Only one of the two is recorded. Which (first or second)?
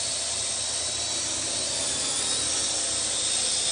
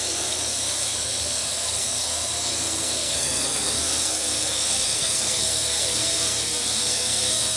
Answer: first